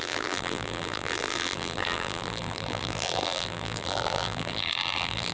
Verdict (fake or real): fake